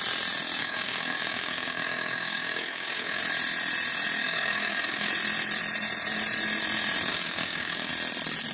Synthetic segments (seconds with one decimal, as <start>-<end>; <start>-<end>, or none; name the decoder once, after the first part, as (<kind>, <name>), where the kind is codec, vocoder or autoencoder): 0.6-3.2 (codec, DAC); 4.2-5.1; 7.1-7.9